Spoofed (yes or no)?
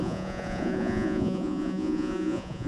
yes